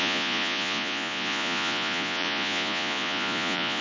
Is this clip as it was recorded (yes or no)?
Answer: no